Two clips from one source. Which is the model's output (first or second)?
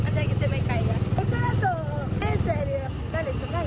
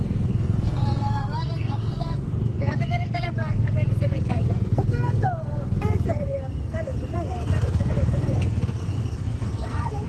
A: second